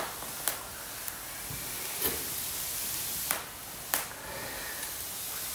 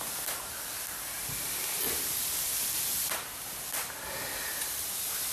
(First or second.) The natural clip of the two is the first